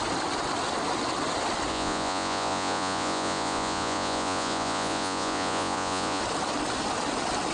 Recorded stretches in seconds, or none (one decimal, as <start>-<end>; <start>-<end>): 0.0-1.7; 6.2-7.5